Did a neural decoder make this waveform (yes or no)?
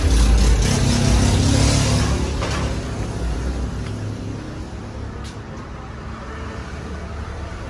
no